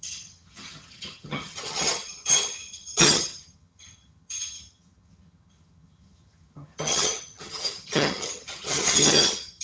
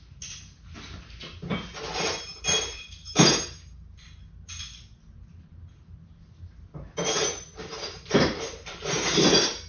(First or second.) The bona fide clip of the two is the second